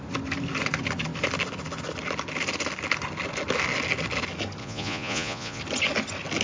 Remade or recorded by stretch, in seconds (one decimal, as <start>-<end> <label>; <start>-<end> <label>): 0.0-4.6 recorded; 4.6-5.6 remade; 5.6-6.4 recorded